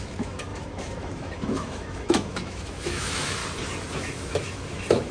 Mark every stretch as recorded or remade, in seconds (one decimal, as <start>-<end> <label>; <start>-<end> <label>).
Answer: 0.0-3.4 remade; 3.4-3.9 recorded; 3.9-5.1 remade